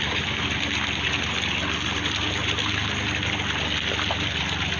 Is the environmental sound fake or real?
real